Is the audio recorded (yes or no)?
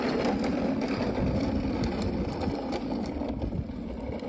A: yes